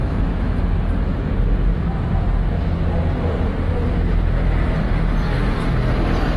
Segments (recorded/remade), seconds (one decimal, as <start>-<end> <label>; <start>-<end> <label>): 0.0-0.6 remade; 0.6-6.4 recorded